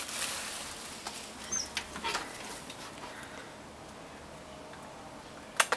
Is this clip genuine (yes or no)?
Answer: yes